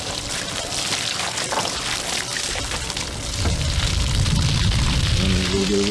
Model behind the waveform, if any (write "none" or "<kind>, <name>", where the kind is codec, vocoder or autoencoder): none